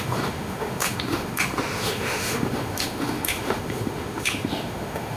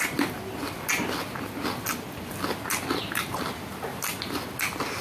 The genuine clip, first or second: second